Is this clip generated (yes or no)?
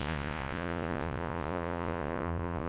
yes